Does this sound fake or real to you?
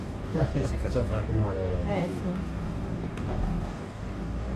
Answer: fake